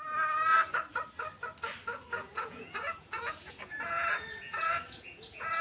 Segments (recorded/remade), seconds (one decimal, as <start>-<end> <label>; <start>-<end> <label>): 0.0-2.2 recorded; 2.2-5.6 remade